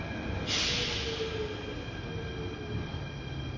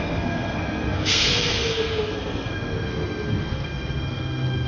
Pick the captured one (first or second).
first